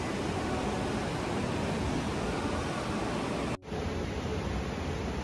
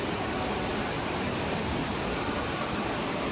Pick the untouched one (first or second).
first